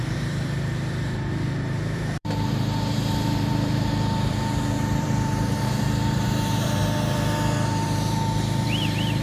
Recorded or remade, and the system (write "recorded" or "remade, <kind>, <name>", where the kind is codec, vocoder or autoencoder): remade, vocoder, BigVGAN v2